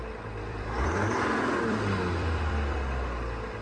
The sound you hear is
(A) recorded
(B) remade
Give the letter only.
B